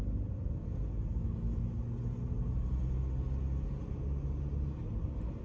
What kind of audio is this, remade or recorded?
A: recorded